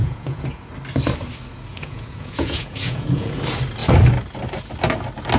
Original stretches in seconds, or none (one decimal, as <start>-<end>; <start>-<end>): 0.7-1.7; 3.4-5.4